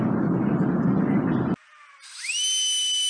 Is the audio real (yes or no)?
yes